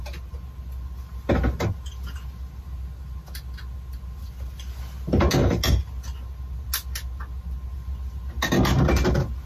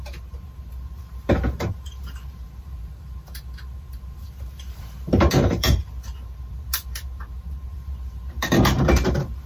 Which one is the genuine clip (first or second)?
first